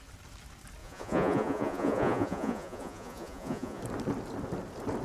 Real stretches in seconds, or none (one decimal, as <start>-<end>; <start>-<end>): 0.0-0.8; 3.8-5.0